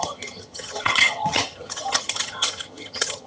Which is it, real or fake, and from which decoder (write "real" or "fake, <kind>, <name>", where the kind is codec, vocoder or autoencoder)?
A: fake, vocoder, HiFi-GAN